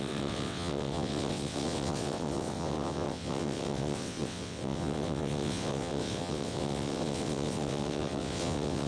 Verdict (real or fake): fake